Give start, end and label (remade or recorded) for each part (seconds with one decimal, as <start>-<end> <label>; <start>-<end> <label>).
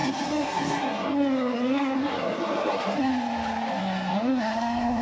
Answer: 0.0-3.1 remade; 3.1-3.8 recorded; 3.8-5.0 remade